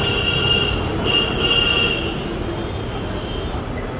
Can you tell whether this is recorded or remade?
recorded